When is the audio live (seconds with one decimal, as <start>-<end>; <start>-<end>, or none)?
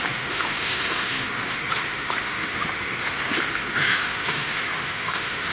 none